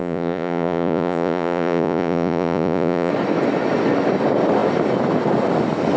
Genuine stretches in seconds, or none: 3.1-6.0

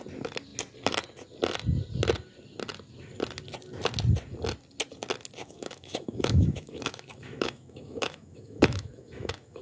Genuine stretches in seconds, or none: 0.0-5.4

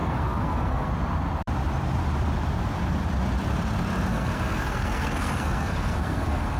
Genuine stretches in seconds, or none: 0.9-4.1

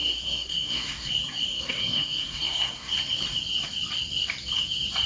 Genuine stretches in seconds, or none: 1.1-1.5; 2.9-5.1

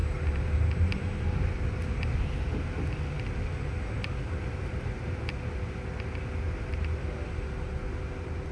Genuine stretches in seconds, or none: 0.0-8.5

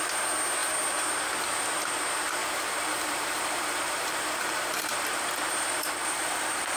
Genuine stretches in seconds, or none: 0.0-2.4